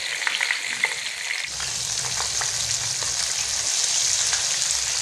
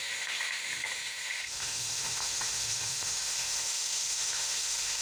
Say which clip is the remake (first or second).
second